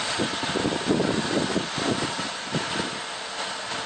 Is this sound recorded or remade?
recorded